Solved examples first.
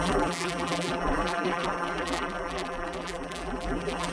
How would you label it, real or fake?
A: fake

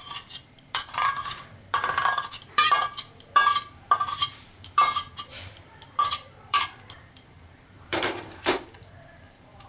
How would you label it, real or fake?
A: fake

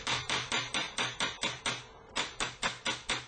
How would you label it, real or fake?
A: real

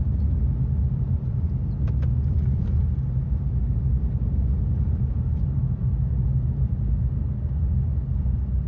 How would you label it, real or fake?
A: real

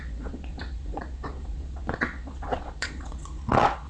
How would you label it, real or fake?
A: fake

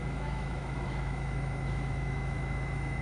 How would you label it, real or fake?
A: fake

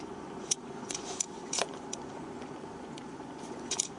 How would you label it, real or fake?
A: fake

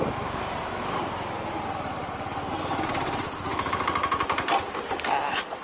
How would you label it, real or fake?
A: real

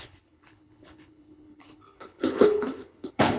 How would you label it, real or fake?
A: fake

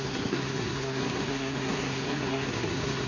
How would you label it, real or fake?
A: fake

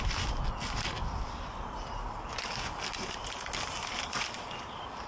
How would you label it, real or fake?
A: real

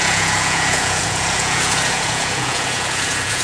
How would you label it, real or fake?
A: fake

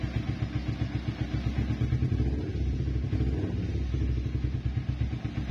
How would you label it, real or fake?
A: real